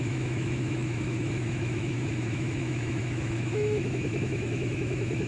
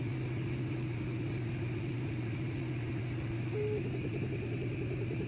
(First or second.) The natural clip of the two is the second